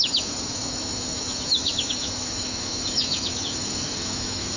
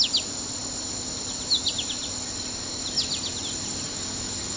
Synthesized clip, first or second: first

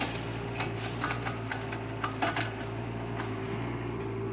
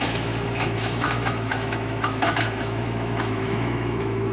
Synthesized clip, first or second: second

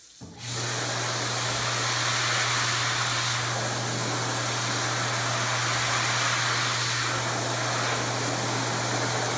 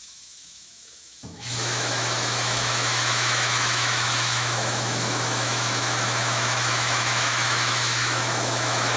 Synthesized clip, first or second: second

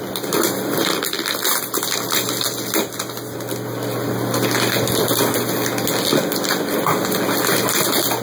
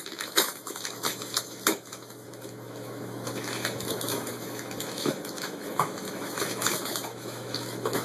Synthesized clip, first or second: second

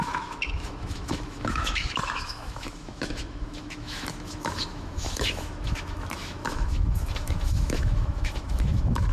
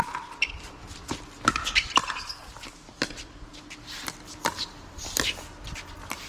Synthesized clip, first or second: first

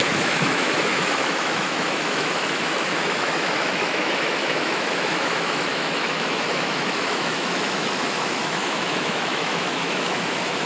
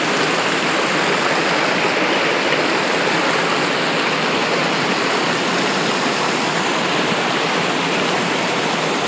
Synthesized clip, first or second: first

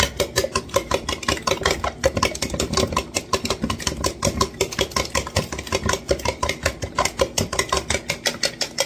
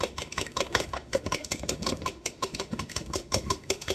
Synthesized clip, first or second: second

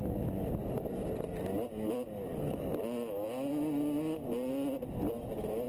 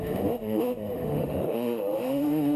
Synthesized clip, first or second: second